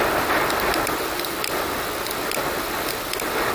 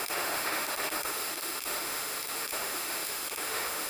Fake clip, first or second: second